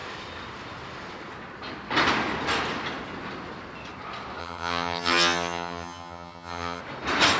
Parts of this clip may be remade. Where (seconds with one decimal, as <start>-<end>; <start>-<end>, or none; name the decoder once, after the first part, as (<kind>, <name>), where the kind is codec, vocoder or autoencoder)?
4.4-6.8 (vocoder, HiFi-GAN)